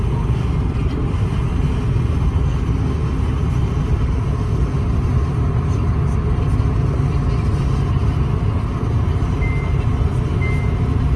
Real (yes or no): yes